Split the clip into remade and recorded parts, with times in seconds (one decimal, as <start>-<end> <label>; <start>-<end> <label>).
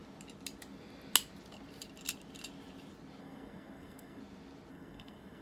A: 0.0-3.2 recorded; 3.2-4.2 remade; 4.2-4.7 recorded; 4.7-5.4 remade